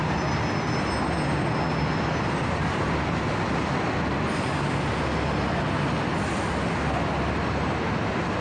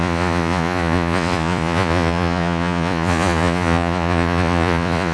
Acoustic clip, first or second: first